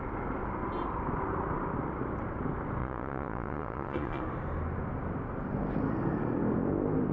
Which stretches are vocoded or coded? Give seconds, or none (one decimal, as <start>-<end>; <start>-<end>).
2.8-4.2